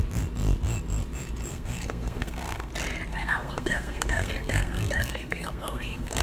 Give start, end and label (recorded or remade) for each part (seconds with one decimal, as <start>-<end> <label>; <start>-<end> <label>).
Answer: 0.0-1.5 recorded; 1.5-2.7 remade; 2.7-3.1 recorded; 3.1-6.2 remade

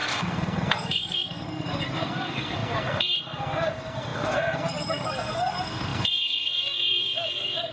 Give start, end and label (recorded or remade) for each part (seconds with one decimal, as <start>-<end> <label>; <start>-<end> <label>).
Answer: 0.0-7.7 remade